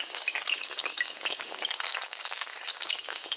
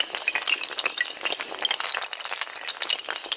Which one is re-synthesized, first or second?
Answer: first